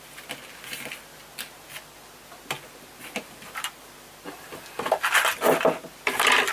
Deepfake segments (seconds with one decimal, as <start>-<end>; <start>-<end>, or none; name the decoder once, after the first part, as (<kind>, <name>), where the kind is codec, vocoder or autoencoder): none